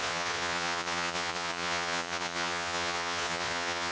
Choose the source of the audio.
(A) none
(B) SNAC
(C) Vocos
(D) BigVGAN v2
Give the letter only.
C